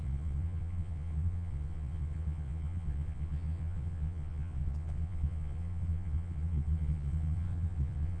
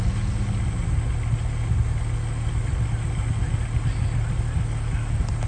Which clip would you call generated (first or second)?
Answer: first